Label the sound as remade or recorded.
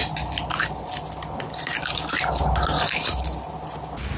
recorded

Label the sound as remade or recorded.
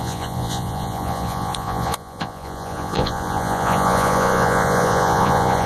remade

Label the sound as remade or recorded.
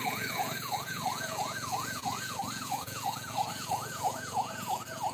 remade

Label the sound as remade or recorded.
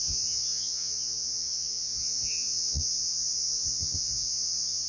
remade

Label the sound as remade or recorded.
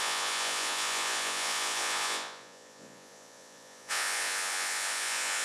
remade